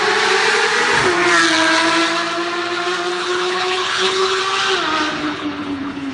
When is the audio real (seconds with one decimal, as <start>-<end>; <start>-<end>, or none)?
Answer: 0.0-3.1; 4.4-5.2